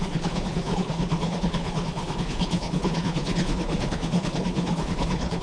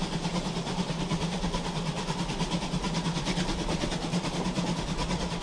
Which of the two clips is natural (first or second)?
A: second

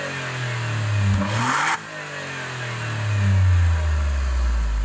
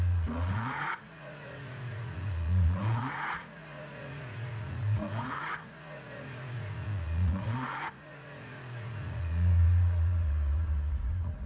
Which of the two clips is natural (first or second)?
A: first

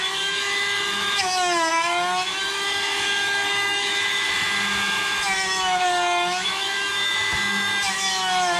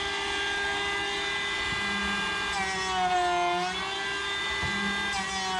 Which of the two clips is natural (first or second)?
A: second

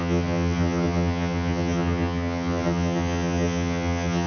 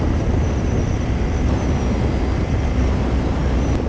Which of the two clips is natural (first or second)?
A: second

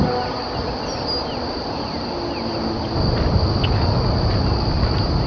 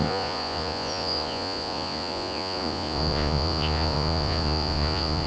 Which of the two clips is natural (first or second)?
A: first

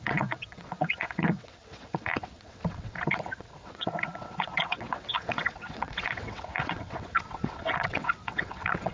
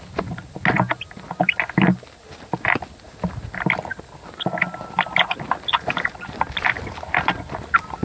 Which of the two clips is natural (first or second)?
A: second